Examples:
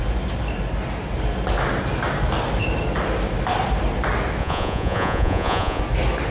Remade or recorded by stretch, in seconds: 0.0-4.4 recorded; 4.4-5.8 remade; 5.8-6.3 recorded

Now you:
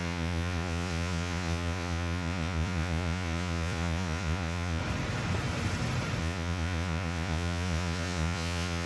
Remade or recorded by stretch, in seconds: 0.0-4.8 remade; 4.8-6.2 recorded; 6.2-8.9 remade

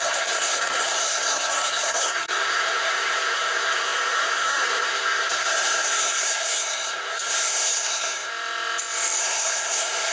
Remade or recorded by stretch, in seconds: 0.0-8.3 remade; 8.3-9.2 recorded; 9.2-10.1 remade

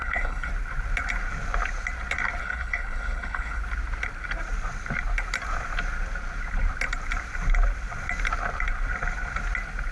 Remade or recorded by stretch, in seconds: 0.0-0.5 remade; 0.5-2.4 recorded; 2.4-3.6 remade; 3.6-9.9 recorded

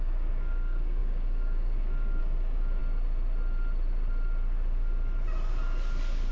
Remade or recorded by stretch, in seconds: 0.0-2.8 remade; 2.8-6.3 recorded

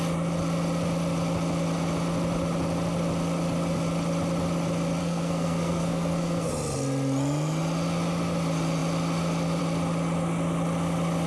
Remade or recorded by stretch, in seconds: 0.0-5.0 recorded; 5.0-6.5 remade; 6.5-11.3 recorded